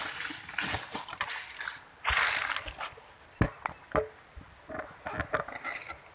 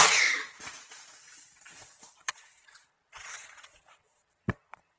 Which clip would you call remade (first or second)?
second